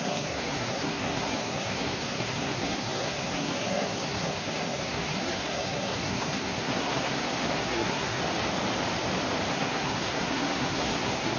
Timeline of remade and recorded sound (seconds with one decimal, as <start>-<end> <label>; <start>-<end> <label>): 0.0-8.2 remade; 8.2-9.5 recorded; 9.5-11.4 remade